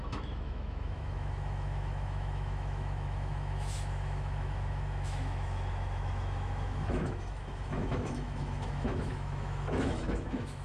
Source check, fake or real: fake